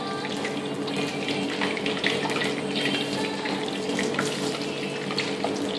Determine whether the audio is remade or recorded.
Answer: recorded